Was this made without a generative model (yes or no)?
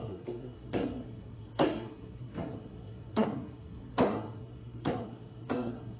no